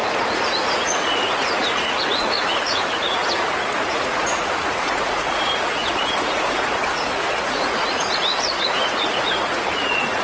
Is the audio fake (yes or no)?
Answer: yes